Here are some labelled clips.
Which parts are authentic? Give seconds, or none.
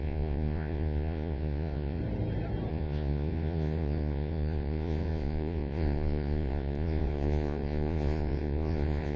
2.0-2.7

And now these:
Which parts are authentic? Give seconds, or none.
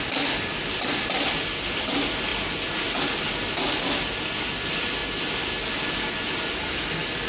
0.0-7.3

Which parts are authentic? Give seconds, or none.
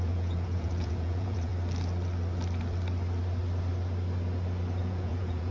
1.5-4.8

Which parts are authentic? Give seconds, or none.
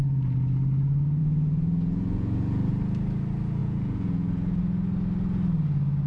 0.0-1.2; 2.7-3.6; 4.6-6.1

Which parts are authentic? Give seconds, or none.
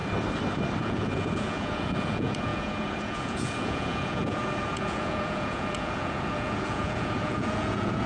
0.0-0.8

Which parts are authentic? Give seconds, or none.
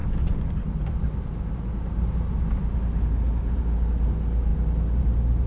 0.0-5.5